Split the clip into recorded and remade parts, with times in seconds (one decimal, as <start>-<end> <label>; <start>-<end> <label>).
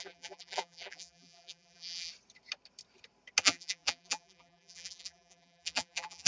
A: 0.0-2.1 remade; 2.1-3.4 recorded; 3.4-6.3 remade